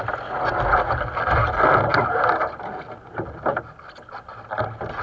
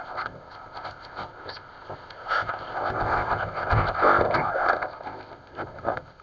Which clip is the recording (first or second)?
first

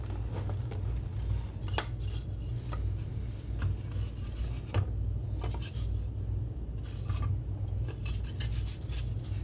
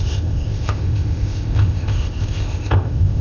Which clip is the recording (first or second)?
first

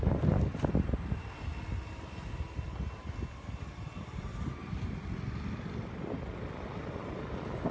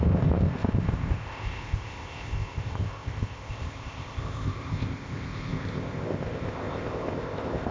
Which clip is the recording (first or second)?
first